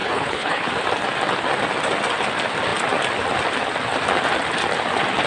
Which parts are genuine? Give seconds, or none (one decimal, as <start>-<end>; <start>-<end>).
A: 0.7-5.3

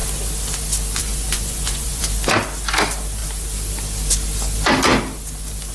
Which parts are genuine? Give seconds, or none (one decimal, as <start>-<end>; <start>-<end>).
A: 0.0-1.0; 2.0-5.7